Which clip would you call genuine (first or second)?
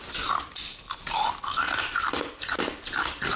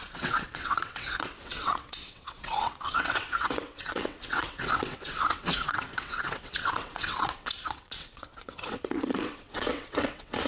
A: first